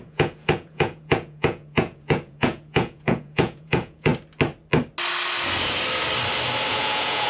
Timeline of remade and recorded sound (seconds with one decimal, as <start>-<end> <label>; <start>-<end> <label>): 0.0-4.1 remade; 4.1-6.7 recorded; 6.7-7.3 remade